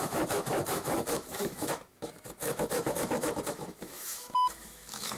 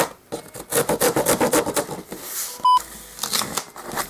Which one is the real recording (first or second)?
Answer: second